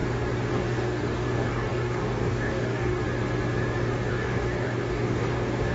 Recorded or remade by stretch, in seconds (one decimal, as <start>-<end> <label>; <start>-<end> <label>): 0.0-0.5 recorded; 0.5-3.0 remade; 3.0-4.1 recorded; 4.1-5.7 remade